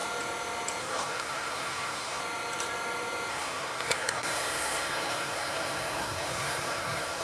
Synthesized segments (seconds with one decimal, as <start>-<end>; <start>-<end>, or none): 0.8-2.2; 3.3-7.2